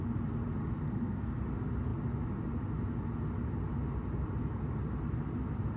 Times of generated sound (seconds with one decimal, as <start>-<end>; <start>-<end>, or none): 0.6-1.4